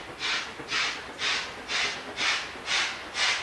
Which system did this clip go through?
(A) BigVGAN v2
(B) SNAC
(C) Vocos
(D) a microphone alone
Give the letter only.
D